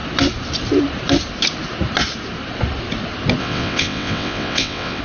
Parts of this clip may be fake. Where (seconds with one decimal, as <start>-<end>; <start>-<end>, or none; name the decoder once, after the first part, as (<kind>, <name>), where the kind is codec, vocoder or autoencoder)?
3.4-5.0 (vocoder, WaveNeXt)